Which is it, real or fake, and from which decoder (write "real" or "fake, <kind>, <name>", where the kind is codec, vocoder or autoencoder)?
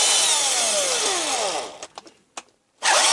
real